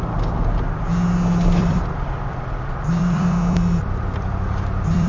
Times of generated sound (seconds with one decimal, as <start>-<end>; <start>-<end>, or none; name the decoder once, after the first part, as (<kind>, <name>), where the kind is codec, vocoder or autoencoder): 1.6-5.1 (vocoder, BigVGAN v2)